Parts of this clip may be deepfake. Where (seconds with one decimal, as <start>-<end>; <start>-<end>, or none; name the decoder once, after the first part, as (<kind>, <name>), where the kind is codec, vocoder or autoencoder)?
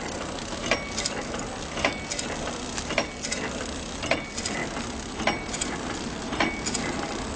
none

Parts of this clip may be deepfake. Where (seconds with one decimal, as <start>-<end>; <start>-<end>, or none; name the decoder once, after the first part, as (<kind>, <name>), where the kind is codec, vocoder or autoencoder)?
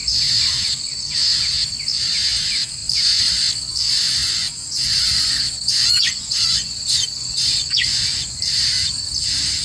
3.9-8.4 (vocoder, Vocos)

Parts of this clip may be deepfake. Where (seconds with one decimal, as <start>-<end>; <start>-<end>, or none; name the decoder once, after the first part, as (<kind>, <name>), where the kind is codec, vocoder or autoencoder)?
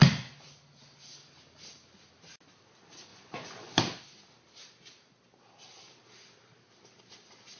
3.1-3.8 (vocoder, Vocos)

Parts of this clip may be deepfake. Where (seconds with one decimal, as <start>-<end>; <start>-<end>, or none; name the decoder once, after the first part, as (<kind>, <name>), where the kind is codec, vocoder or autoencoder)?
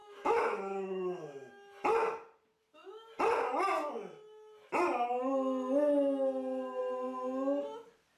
0.0-1.5 (autoencoder, DAC-VAE)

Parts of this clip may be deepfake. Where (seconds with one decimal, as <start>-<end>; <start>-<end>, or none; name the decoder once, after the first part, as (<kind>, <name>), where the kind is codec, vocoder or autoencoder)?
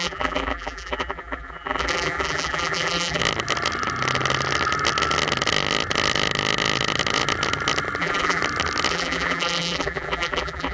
0.0-3.2 (vocoder, BigVGAN v2); 8.0-8.4; 8.9-10.7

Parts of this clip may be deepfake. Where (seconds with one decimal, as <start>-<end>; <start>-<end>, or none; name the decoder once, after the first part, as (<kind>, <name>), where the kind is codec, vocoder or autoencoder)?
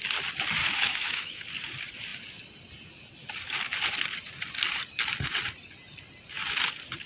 0.6-1.4 (autoencoder, DAC-VAE)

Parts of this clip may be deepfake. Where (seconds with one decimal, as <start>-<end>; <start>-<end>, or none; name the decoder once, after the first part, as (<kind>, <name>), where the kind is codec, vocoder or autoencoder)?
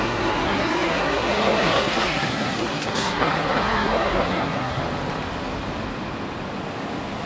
0.0-4.8 (codec, SNAC)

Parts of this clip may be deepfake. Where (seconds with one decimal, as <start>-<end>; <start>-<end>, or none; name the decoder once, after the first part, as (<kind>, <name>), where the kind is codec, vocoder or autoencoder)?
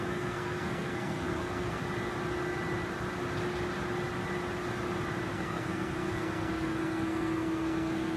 0.0-1.8 (codec, SNAC); 5.3-8.2